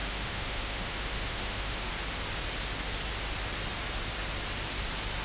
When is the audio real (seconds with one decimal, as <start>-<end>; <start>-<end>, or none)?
1.9-5.2

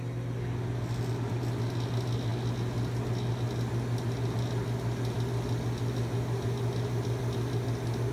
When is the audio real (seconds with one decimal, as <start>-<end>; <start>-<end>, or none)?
0.0-8.1

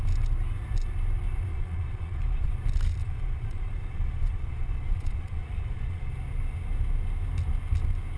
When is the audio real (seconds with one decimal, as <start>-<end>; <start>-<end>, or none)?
0.0-1.5; 2.5-3.0; 6.1-8.2

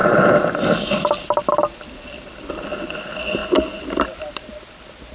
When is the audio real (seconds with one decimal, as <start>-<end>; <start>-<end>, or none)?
0.0-5.1